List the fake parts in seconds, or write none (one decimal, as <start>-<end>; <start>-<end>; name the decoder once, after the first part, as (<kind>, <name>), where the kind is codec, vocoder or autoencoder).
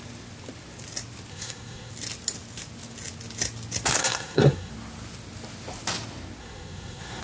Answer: 1.3-1.9 (codec, SNAC); 4.0-4.7; 6.4-7.2